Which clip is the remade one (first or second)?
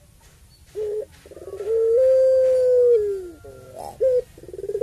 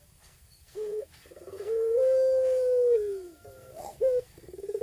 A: second